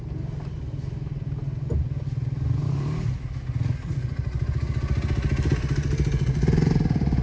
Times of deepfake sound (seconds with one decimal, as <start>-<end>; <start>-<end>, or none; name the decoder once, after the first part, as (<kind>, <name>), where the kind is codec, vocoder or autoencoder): 2.6-3.1 (vocoder, BigVGAN v2)